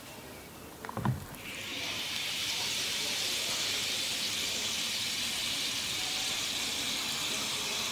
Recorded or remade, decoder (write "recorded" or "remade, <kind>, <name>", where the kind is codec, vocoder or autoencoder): remade, vocoder, BigVGAN v2